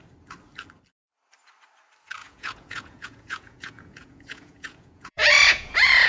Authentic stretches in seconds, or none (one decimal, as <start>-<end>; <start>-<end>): 0.0-2.2